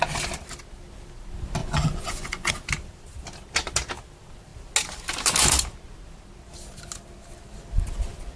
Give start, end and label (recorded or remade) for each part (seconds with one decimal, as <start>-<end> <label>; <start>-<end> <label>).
0.0-1.6 recorded; 1.6-2.5 remade; 2.5-8.4 recorded